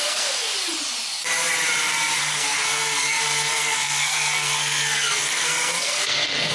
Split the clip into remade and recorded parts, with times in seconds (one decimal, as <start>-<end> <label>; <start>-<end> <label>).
0.0-0.5 remade; 0.5-2.2 recorded; 2.2-6.5 remade